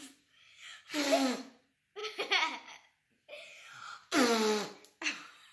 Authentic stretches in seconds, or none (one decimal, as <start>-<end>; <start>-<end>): 0.0-5.5

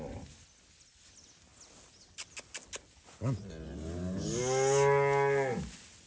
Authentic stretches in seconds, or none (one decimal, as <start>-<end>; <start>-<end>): 0.0-6.1